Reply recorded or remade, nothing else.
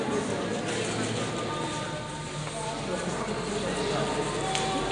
recorded